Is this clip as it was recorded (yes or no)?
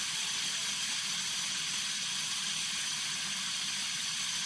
yes